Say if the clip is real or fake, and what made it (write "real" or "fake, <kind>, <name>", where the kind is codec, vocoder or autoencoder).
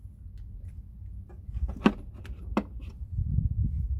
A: real